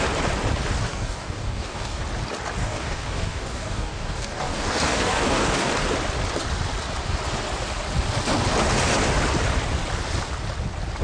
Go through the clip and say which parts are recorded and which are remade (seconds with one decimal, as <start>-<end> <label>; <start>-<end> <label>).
0.0-0.9 recorded; 0.9-2.0 remade; 2.0-2.6 recorded; 2.6-5.7 remade; 5.7-11.0 recorded